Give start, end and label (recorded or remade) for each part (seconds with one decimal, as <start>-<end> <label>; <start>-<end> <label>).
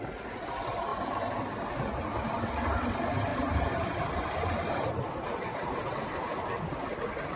0.0-0.9 recorded; 0.9-2.4 remade; 2.4-3.3 recorded; 3.3-6.4 remade; 6.4-7.4 recorded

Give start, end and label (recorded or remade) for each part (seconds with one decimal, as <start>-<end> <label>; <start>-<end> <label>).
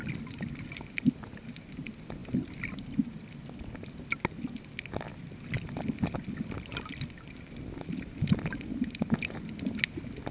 0.0-10.3 recorded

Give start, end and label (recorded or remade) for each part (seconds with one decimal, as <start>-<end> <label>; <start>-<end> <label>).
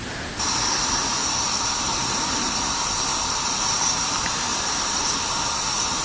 0.0-6.0 recorded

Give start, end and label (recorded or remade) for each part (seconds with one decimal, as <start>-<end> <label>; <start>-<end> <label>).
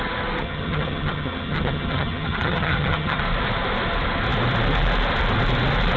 0.0-0.4 recorded; 0.4-3.2 remade; 3.2-6.0 recorded